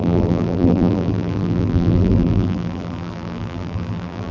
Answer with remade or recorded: remade